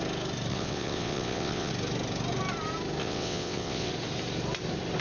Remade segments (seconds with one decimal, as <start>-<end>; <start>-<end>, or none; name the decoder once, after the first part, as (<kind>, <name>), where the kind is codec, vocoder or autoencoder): 0.5-1.7 (vocoder, WaveNeXt); 3.0-3.9